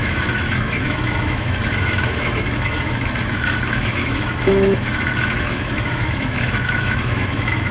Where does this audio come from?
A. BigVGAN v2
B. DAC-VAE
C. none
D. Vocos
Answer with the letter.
B